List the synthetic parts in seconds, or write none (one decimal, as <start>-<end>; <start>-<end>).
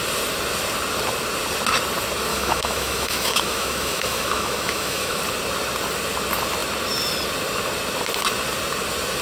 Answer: 2.3-5.2